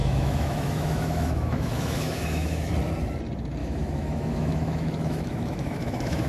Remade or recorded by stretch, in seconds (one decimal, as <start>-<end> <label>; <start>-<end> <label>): 0.0-2.7 remade; 2.7-3.6 recorded; 3.6-6.3 remade